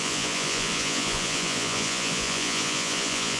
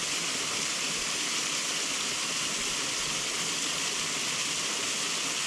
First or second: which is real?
second